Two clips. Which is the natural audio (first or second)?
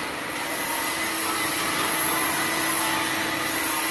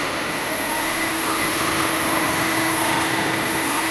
first